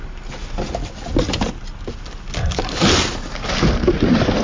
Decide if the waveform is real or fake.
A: real